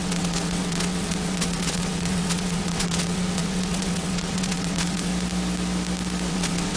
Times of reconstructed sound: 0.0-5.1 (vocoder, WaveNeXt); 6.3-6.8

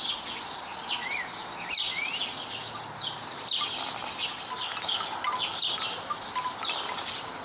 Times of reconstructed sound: none

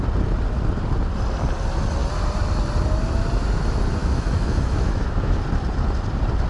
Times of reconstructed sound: 4.0-5.4 (autoencoder, DAC-VAE)

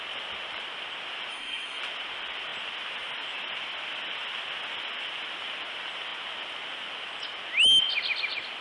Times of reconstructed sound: 1.3-1.8 (codec, SNAC)

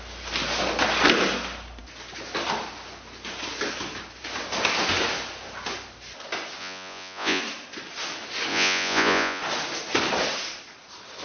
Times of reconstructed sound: 6.6-7.4 (vocoder, Vocos); 8.5-9.4

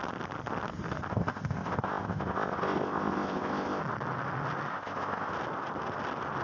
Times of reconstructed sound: 1.1-3.8 (codec, ZipCodec); 4.7-5.3

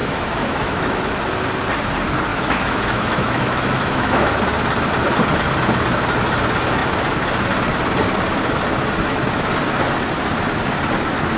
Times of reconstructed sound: 0.0-1.0 (autoencoder, DAC-VAE); 2.3-4.4

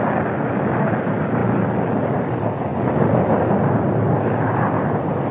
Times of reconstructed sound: none